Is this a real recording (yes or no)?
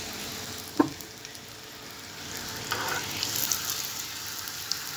yes